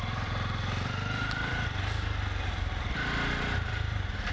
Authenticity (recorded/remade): remade